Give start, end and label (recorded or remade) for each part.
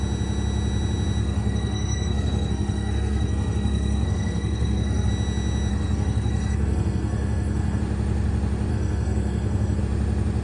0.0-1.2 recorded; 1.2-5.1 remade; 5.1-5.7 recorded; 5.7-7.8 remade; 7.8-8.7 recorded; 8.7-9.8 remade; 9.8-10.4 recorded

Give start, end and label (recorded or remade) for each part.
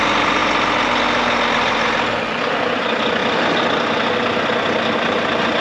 0.0-5.6 recorded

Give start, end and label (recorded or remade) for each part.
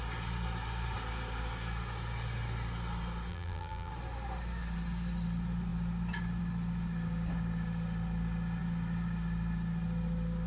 0.0-3.3 recorded; 3.3-3.9 remade; 3.9-10.5 recorded